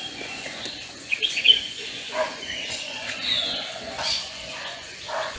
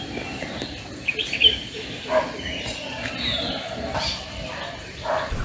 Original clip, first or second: second